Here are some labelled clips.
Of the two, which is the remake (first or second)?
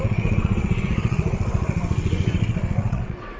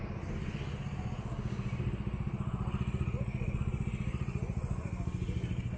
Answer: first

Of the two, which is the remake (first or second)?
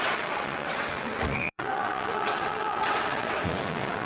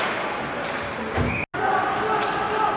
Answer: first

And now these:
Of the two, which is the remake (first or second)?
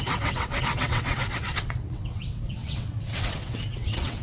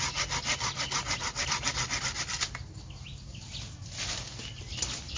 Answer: first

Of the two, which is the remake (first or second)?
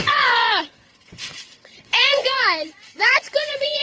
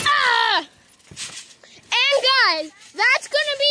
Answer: first